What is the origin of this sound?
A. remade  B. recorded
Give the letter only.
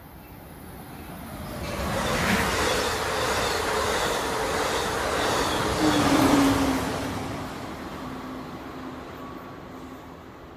B